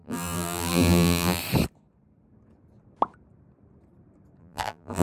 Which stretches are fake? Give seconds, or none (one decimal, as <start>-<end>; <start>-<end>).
0.0-1.4; 4.4-5.0